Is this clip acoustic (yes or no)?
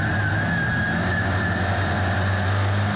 yes